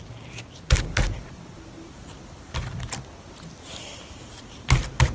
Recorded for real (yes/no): yes